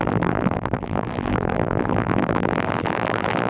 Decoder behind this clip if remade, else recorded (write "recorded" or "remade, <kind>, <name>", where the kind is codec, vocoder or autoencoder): remade, vocoder, BigVGAN v2